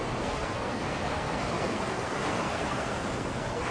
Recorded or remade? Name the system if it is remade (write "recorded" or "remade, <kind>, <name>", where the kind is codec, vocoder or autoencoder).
remade, codec, SNAC